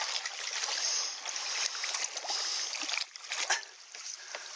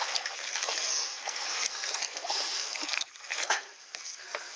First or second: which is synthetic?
second